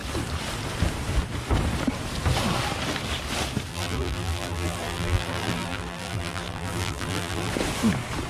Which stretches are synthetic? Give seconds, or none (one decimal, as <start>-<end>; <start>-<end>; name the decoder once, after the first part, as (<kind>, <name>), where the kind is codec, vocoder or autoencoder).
3.7-7.5 (vocoder, BigVGAN v2)